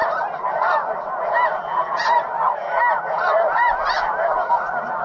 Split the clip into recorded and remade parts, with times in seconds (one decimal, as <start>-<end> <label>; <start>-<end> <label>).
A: 0.0-2.0 recorded; 2.0-2.6 remade; 2.6-3.4 recorded; 3.4-5.0 remade